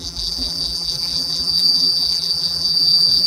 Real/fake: fake